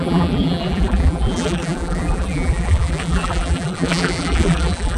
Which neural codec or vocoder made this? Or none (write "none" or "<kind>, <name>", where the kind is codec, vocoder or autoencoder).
vocoder, BigVGAN v2